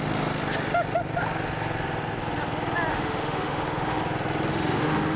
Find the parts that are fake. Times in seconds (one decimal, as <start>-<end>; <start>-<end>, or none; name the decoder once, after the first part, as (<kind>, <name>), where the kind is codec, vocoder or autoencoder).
2.9-4.0 (autoencoder, DAC-VAE); 4.5-5.2